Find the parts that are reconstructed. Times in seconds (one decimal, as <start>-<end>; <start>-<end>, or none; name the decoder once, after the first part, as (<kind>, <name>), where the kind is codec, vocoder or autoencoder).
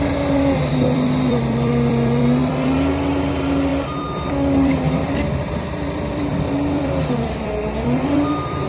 0.0-8.7 (vocoder, BigVGAN v2)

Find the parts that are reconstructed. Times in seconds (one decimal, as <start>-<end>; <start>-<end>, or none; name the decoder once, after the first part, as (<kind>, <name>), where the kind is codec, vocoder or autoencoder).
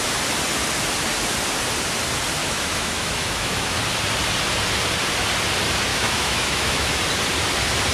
2.4-3.8 (autoencoder, DAC-VAE); 5.9-7.0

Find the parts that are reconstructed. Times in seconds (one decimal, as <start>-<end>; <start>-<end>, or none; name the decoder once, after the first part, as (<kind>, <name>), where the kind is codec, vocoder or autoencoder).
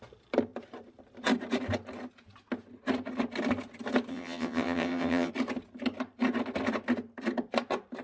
4.1-5.3 (vocoder, HiFi-GAN)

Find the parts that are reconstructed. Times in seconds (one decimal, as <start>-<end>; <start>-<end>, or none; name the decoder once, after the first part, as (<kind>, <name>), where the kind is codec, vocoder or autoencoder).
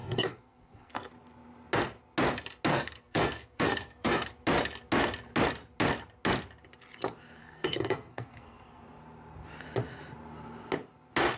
0.0-1.1 (codec, SNAC); 2.7-4.3; 7.4-8.8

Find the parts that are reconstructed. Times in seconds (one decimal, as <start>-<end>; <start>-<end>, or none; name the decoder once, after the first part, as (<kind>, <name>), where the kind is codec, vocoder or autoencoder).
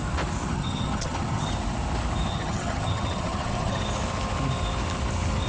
0.5-1.5 (vocoder, HiFi-GAN); 2.3-3.8